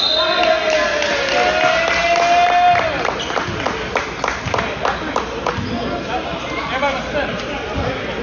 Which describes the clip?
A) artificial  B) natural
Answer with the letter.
B